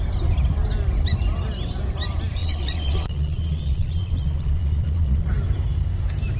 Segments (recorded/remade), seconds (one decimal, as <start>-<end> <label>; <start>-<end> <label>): 0.0-2.4 recorded; 2.4-5.3 remade; 5.3-6.4 recorded